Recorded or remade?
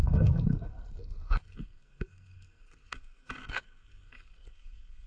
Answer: remade